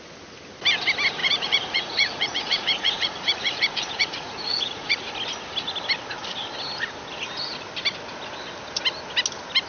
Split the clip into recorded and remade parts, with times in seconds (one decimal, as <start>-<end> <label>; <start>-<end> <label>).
0.0-1.2 recorded; 1.2-5.1 remade; 5.1-9.7 recorded